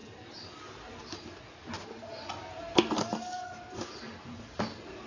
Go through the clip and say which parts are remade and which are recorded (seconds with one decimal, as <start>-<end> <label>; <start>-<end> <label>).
0.0-5.1 recorded